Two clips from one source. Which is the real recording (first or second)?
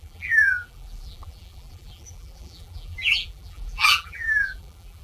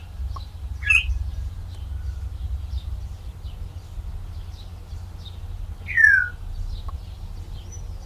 second